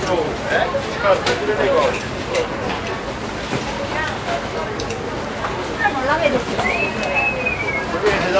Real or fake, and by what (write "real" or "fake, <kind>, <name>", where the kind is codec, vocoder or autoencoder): real